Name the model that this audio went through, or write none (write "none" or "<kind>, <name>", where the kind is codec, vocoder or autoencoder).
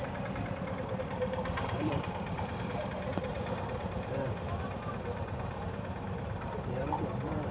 vocoder, BigVGAN v2